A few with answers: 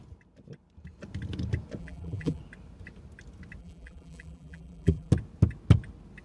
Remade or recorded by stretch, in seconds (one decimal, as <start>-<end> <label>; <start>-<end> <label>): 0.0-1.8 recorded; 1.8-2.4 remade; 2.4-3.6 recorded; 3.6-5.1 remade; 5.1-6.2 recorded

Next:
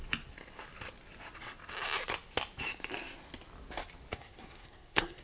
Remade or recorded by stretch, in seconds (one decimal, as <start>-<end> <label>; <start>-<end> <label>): 0.0-4.1 recorded; 4.1-5.2 remade

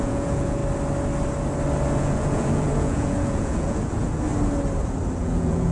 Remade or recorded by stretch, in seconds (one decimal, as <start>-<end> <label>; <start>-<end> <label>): 0.0-0.6 remade; 0.6-2.0 recorded; 2.0-4.3 remade; 4.3-5.2 recorded; 5.2-5.7 remade

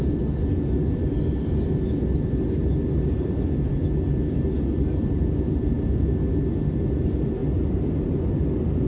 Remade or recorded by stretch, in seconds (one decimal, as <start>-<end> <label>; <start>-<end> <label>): 0.0-8.9 recorded